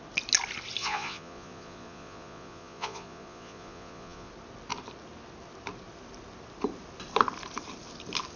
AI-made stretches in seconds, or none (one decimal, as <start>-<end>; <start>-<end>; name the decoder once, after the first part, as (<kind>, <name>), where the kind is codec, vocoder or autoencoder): 0.8-4.3 (vocoder, Vocos)